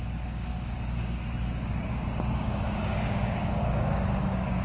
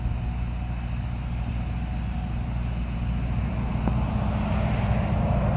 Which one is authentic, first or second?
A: second